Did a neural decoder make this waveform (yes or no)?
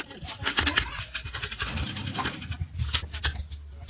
no